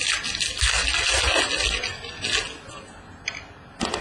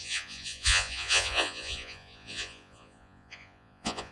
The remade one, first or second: second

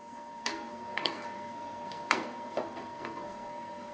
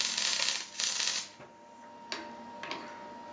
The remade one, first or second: first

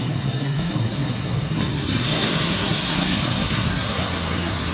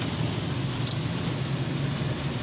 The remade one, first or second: first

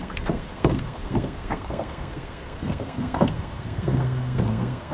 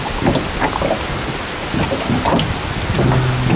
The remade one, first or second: first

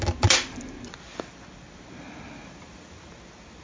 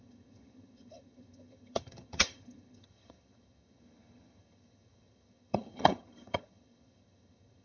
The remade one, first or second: second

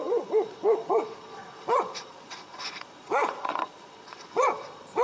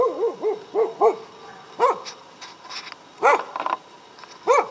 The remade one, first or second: first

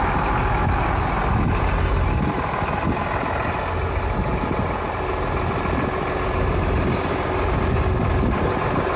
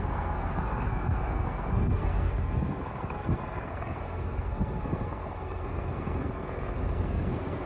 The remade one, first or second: second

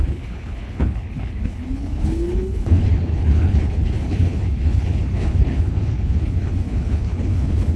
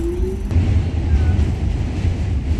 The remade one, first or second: first